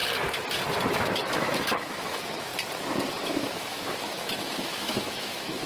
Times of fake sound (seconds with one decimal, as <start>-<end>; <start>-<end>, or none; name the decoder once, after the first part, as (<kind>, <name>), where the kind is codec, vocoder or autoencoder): 0.9-2.5 (autoencoder, DAC-VAE); 3.1-5.7

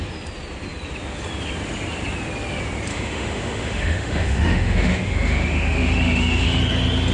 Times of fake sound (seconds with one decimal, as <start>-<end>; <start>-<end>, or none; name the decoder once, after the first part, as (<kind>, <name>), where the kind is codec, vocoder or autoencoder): 2.9-6.6 (autoencoder, DAC-VAE)

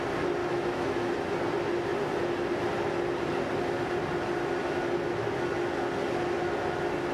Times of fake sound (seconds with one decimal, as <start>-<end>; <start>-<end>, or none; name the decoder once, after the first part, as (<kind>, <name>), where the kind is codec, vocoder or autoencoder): 0.4-1.1 (autoencoder, DAC-VAE)

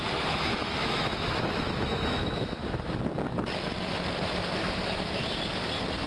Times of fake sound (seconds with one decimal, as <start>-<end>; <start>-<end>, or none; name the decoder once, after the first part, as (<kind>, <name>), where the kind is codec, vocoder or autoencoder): 0.0-2.6 (autoencoder, DAC-VAE); 4.5-5.2

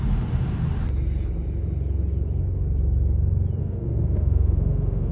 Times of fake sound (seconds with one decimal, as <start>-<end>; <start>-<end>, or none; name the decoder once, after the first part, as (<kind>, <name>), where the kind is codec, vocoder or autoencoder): 3.6-5.1 (autoencoder, DAC-VAE)